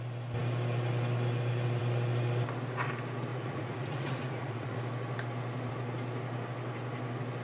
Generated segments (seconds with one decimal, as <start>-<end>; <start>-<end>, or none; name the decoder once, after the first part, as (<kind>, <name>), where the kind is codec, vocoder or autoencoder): 3.3-4.8 (vocoder, Vocos)